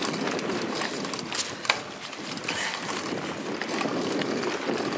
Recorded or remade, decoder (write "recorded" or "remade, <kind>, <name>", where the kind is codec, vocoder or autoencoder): recorded